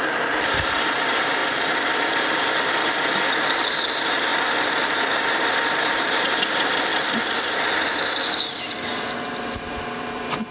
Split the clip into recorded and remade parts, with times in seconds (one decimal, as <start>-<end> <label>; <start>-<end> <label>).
0.0-1.4 remade; 1.4-2.0 recorded; 2.0-4.3 remade; 4.3-6.0 recorded; 6.0-6.9 remade; 6.9-9.6 recorded; 9.6-10.5 remade